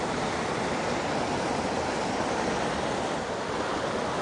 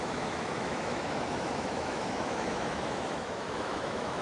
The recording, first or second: first